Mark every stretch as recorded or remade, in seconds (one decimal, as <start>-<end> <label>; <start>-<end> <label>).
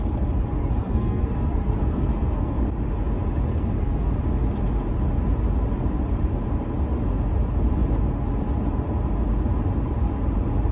0.0-0.6 recorded; 0.6-2.6 remade; 2.6-3.5 recorded; 3.5-4.1 remade; 4.1-10.7 recorded